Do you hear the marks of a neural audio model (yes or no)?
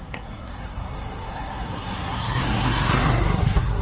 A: yes